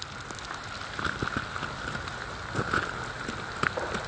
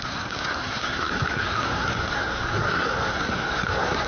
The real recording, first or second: first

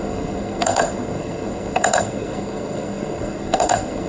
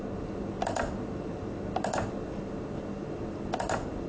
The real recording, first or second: second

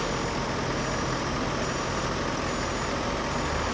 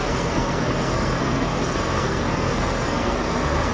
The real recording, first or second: first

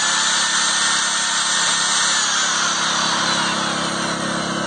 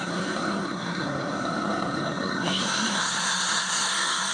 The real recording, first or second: first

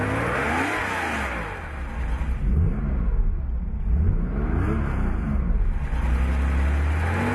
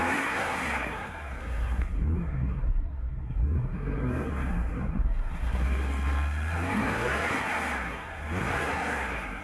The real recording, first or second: first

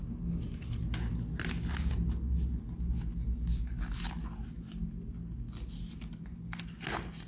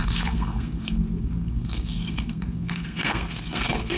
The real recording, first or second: first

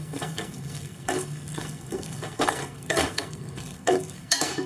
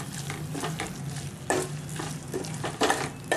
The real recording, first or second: second